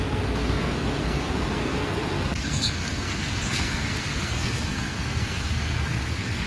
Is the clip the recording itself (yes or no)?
no